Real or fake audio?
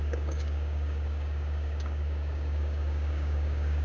fake